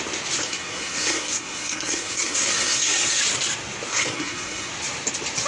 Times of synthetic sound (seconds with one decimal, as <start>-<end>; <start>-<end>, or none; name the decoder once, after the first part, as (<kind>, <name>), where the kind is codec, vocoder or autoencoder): 0.4-3.2 (codec, SNAC); 3.9-4.7